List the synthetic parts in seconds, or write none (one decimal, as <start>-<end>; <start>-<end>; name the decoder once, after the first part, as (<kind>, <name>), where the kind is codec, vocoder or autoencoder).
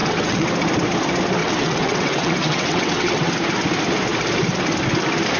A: 0.0-0.5 (vocoder, WaveNeXt); 1.4-3.3